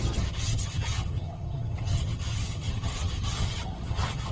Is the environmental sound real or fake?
fake